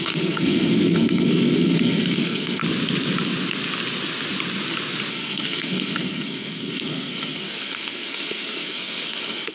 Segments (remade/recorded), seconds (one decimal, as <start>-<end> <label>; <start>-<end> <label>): 0.0-2.6 remade; 2.6-5.1 recorded; 5.1-9.5 remade